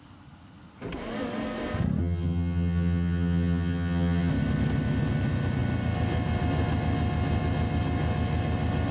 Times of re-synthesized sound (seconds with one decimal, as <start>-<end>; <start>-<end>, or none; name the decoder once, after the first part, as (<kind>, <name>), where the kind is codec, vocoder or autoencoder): 2.0-4.3 (vocoder, HiFi-GAN)